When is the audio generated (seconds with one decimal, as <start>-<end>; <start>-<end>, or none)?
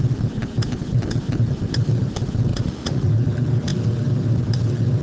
2.5-3.1